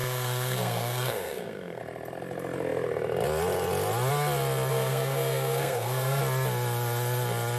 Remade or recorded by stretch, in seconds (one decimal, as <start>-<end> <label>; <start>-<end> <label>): 0.0-1.8 remade; 1.8-4.7 recorded; 4.7-6.2 remade; 6.2-7.6 recorded